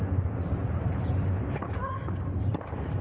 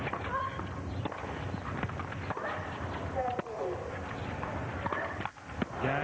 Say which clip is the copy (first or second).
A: first